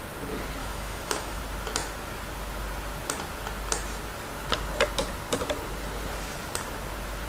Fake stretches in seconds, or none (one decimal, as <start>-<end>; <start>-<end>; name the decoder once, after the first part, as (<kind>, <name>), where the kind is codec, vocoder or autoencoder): 0.6-1.4 (autoencoder, DAC-VAE)